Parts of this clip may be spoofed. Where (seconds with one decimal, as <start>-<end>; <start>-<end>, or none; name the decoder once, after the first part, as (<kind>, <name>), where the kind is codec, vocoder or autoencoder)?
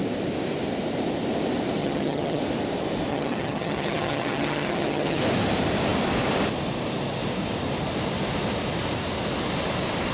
1.8-2.4 (vocoder, HiFi-GAN); 3.1-5.2